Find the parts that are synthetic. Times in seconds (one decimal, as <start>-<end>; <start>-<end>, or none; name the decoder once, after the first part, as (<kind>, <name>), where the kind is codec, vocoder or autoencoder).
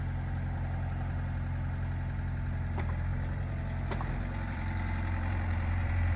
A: 3.1-6.2 (vocoder, BigVGAN v2)